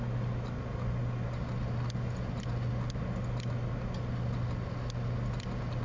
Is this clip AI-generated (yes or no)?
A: no